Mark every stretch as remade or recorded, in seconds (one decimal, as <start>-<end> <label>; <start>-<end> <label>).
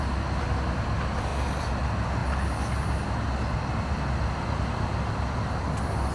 0.0-6.1 recorded